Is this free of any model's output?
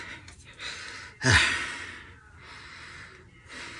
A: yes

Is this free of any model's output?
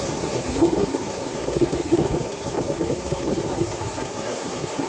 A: no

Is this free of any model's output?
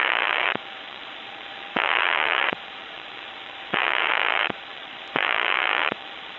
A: no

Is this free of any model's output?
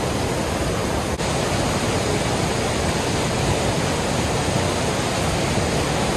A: yes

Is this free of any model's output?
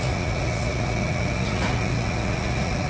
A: no